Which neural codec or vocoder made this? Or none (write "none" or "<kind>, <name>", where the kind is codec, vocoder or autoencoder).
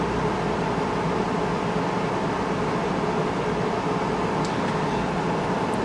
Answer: none